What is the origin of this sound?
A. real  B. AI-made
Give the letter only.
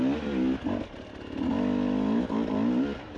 A